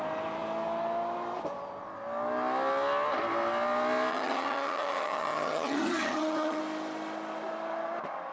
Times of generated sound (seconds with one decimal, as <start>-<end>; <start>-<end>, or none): 4.1-6.6